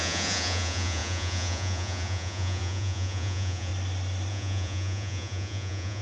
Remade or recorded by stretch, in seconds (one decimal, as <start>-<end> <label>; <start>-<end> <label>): 0.0-3.7 remade; 3.7-4.3 recorded; 4.3-6.0 remade